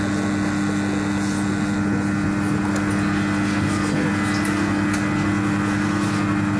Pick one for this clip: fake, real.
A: real